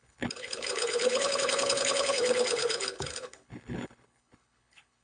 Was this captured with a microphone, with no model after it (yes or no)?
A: no